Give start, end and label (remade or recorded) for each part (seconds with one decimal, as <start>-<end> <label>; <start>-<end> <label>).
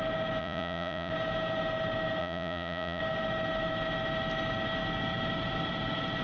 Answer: 0.0-0.4 recorded; 0.4-1.1 remade; 1.1-2.2 recorded; 2.2-3.0 remade; 3.0-6.2 recorded